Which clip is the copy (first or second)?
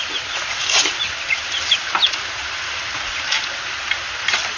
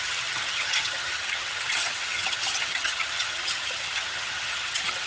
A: second